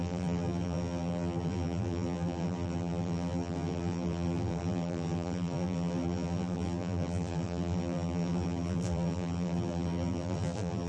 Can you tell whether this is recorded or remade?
remade